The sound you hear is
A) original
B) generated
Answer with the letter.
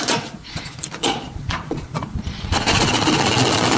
B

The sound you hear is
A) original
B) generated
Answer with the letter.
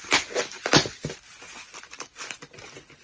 A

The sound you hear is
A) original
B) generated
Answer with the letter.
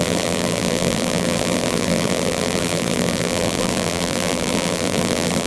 B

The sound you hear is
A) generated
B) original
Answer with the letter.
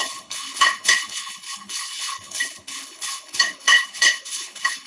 A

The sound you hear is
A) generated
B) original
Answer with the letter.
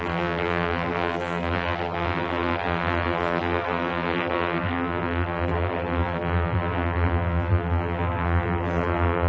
A